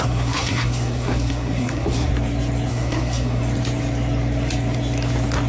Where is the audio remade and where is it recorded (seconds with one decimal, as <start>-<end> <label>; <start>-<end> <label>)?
0.0-2.1 remade; 2.1-2.7 recorded; 2.7-3.4 remade; 3.4-5.5 recorded